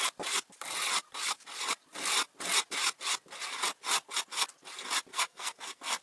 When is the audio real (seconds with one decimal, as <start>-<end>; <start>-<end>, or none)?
0.0-5.1